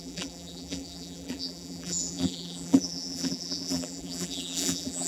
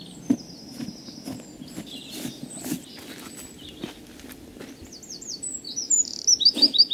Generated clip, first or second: first